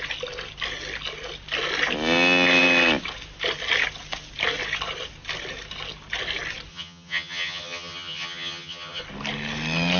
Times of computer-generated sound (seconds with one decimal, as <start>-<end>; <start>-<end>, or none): 6.7-9.0